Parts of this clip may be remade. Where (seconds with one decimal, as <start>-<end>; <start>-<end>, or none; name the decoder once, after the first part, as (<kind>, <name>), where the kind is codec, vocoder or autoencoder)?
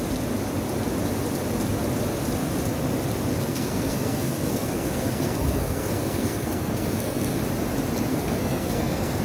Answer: 3.3-7.4 (codec, SNAC); 8.1-9.2